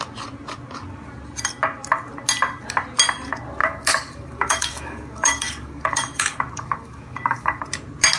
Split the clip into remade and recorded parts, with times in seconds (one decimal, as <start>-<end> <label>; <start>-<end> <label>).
0.0-3.6 recorded; 3.6-7.6 remade; 7.6-8.2 recorded

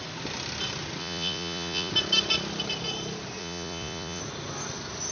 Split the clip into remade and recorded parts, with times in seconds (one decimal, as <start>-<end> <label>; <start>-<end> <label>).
0.0-1.0 recorded; 1.0-1.9 remade; 1.9-3.4 recorded; 3.4-4.2 remade; 4.2-5.1 recorded